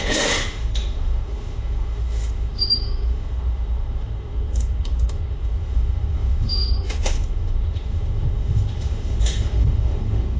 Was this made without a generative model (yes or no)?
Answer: no